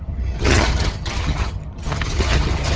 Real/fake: fake